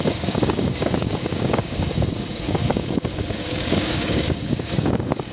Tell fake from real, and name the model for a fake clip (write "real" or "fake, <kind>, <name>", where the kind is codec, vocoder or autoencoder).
fake, codec, DAC